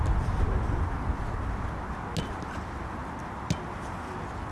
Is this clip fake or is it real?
real